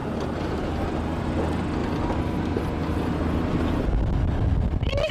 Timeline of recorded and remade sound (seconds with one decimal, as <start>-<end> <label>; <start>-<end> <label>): 0.0-0.8 remade; 0.8-5.1 recorded